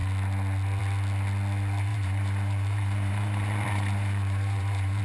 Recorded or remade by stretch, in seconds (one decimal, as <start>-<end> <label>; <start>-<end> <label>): 0.0-1.9 recorded; 1.9-5.0 remade

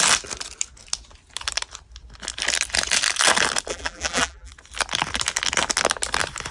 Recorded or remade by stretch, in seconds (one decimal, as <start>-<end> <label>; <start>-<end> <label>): 0.0-3.7 recorded; 3.7-4.5 remade; 4.5-6.5 recorded

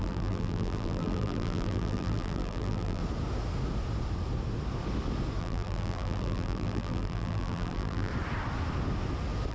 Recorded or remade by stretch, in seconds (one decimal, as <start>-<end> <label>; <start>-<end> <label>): 0.0-3.0 remade; 3.0-5.4 recorded; 5.4-8.1 remade; 8.1-9.5 recorded